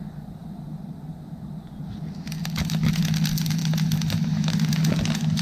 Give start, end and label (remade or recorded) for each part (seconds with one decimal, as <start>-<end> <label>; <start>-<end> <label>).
0.0-5.4 recorded